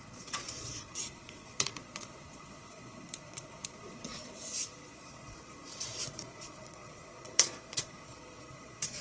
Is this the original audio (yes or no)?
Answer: no